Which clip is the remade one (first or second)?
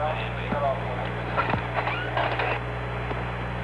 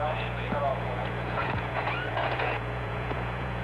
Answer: second